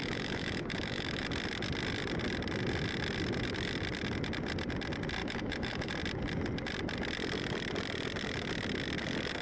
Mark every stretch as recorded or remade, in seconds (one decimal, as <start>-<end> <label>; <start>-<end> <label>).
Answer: 0.0-1.2 remade; 1.2-5.2 recorded; 5.2-5.9 remade; 5.9-9.4 recorded